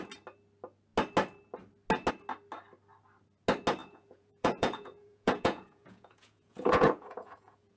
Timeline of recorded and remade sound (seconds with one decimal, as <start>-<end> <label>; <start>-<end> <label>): 0.0-3.8 recorded; 3.8-7.8 remade